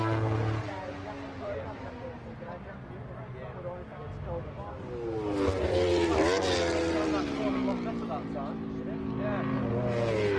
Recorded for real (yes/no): yes